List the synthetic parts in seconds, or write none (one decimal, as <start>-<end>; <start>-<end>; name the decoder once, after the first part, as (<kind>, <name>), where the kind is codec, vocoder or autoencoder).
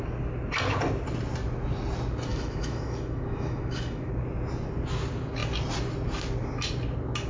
2.3-4.1 (autoencoder, DAC-VAE)